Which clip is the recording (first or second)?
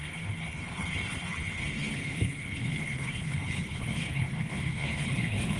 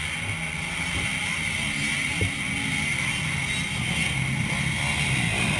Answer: second